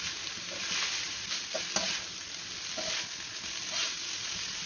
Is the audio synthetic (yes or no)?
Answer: no